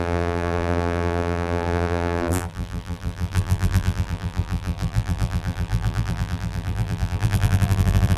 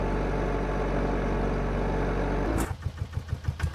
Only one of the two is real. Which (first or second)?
second